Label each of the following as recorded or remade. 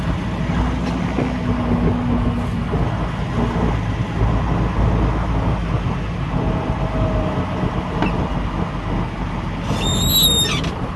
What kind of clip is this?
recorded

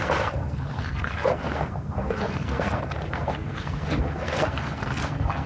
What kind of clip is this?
remade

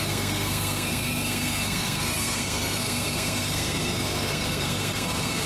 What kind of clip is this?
remade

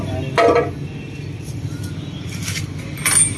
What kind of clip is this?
recorded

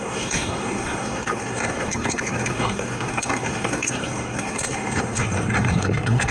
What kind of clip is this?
remade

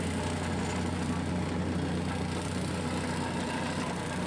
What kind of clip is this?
recorded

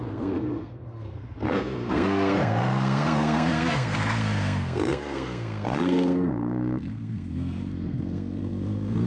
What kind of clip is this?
remade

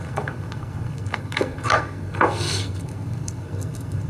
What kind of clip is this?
remade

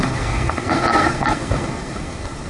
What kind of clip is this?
remade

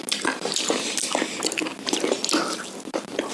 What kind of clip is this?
recorded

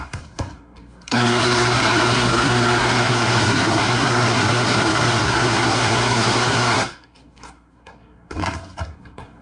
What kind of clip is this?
remade